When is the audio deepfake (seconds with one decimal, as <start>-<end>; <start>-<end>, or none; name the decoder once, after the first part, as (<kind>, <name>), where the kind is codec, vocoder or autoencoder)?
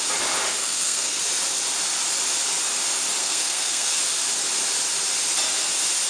0.6-1.2 (codec, SNAC); 3.2-4.0